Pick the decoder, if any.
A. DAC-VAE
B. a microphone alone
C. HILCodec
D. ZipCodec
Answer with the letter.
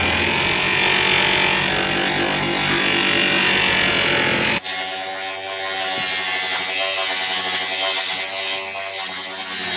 B